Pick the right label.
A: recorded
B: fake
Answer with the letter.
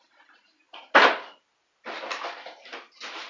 A